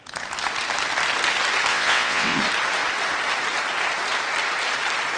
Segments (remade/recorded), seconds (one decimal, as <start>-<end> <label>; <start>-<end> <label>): 0.0-1.7 recorded; 1.7-2.4 remade; 2.4-5.2 recorded